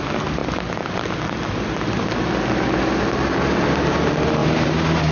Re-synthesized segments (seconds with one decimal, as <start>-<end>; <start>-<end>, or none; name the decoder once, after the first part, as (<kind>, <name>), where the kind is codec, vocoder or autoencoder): 4.4-5.1 (vocoder, BigVGAN v2)